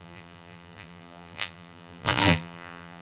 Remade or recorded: remade